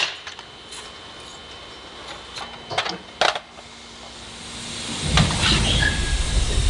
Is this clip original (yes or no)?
yes